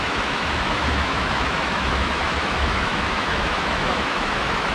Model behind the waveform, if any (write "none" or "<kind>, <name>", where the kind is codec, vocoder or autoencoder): autoencoder, DAC-VAE